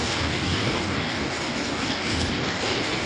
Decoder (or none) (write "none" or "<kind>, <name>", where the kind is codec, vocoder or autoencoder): codec, DAC